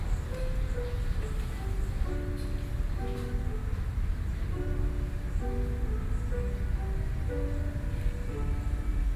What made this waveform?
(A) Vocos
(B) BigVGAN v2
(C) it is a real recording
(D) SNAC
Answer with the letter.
C